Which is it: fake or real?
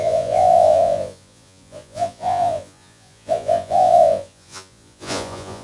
fake